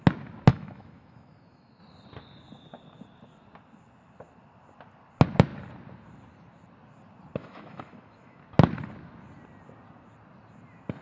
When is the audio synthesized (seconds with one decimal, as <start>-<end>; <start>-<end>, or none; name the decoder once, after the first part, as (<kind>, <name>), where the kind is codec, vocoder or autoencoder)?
0.5-1.8 (autoencoder, DAC-VAE); 7.4-8.4